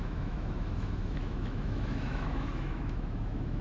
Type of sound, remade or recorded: remade